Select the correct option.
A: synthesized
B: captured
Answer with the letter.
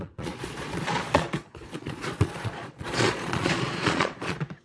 A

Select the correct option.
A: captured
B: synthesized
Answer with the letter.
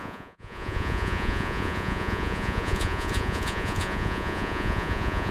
B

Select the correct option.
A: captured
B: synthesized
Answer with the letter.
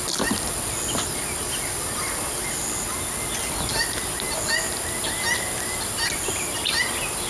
A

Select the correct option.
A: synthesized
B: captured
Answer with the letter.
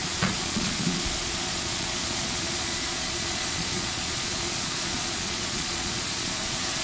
A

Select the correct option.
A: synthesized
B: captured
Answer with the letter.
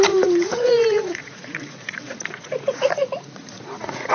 A